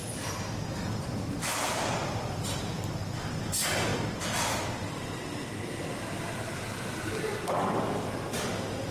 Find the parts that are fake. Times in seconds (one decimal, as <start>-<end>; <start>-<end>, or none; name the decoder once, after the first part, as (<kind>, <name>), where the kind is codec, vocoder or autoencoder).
none

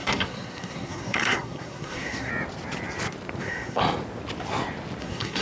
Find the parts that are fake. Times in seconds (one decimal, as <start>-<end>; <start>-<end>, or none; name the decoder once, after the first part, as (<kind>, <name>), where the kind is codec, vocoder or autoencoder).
0.0-2.3 (codec, SNAC); 3.4-3.8; 5.0-5.4

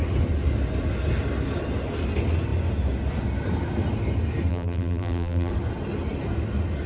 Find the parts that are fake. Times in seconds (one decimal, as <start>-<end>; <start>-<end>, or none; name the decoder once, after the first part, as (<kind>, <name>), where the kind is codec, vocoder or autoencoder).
4.5-5.5 (vocoder, BigVGAN v2)